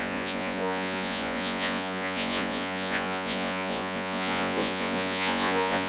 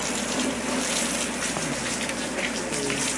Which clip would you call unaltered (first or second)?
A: second